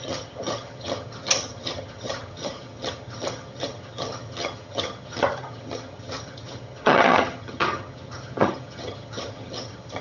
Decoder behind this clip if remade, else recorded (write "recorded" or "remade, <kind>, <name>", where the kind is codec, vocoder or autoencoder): remade, vocoder, HiFi-GAN